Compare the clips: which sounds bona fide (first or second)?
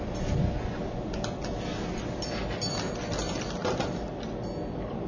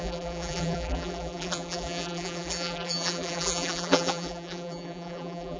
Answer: first